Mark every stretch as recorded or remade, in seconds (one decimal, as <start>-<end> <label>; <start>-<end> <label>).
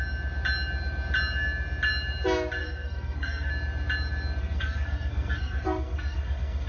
0.0-2.6 recorded; 2.6-3.5 remade; 3.5-4.4 recorded; 4.4-6.7 remade